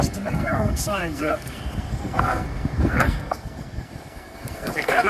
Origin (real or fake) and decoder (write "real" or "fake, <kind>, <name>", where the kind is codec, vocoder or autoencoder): fake, codec, SNAC